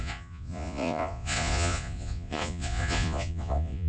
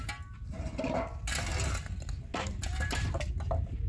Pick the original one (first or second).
second